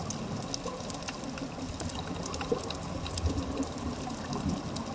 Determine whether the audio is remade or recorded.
recorded